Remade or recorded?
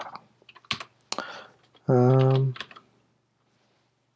recorded